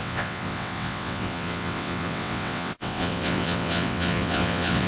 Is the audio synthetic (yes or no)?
yes